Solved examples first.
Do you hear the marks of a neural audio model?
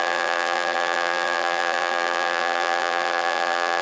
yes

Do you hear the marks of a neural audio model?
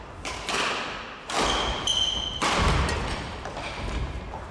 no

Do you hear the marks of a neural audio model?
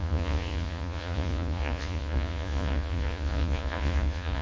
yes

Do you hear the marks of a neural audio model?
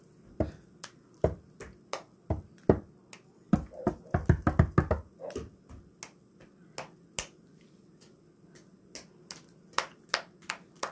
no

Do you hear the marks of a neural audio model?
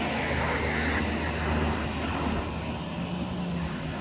no